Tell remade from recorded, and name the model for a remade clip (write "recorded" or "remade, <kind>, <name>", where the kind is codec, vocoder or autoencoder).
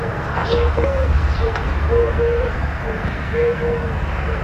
remade, codec, SNAC